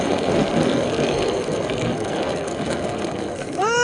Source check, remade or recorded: remade